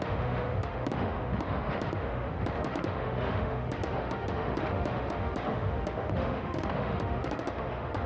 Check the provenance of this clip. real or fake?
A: fake